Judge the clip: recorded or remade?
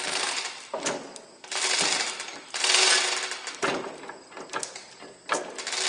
recorded